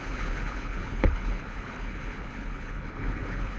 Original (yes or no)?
no